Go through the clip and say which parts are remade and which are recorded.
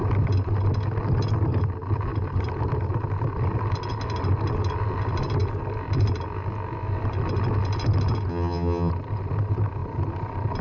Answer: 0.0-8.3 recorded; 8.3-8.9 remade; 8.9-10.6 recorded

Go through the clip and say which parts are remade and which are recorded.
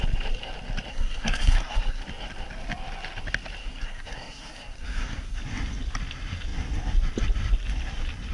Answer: 0.0-0.9 recorded; 0.9-2.0 remade; 2.0-3.6 recorded; 3.6-5.4 remade; 5.4-8.3 recorded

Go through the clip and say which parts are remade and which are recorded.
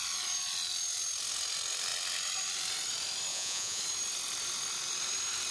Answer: 0.0-3.3 recorded; 3.3-3.8 remade; 3.8-5.5 recorded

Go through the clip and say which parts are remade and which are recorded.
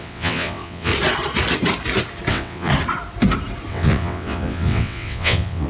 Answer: 0.0-0.9 remade; 0.9-2.3 recorded; 2.3-2.7 remade; 2.7-3.7 recorded; 3.7-5.7 remade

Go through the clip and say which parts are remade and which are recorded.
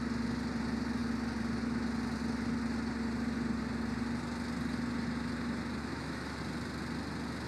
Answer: 0.0-5.8 recorded; 5.8-6.4 remade; 6.4-7.5 recorded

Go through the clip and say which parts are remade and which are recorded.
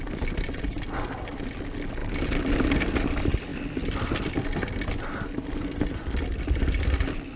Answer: 0.0-7.4 recorded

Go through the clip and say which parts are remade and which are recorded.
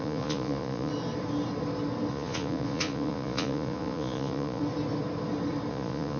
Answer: 0.0-0.9 remade; 0.9-2.1 recorded; 2.1-4.6 remade; 4.6-5.7 recorded; 5.7-6.2 remade